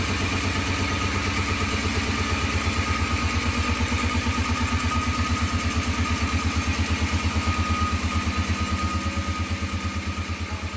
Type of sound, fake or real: real